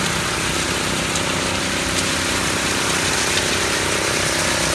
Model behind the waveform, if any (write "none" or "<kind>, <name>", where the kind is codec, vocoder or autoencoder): none